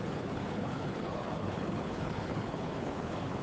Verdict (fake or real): fake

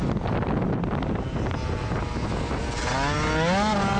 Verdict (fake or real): real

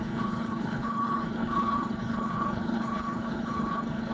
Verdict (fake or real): fake